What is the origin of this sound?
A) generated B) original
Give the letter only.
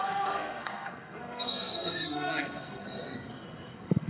A